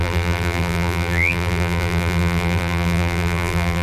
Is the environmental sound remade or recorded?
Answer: remade